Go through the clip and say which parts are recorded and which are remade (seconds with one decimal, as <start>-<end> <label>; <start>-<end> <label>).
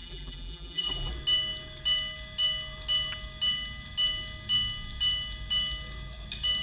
0.0-1.1 remade; 1.1-6.6 recorded